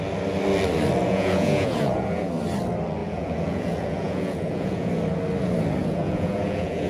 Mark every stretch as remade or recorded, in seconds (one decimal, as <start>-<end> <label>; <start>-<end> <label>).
0.0-1.1 recorded; 1.1-2.3 remade; 2.3-3.0 recorded; 3.0-4.9 remade; 4.9-5.8 recorded; 5.8-6.9 remade